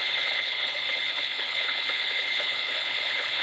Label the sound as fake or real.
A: fake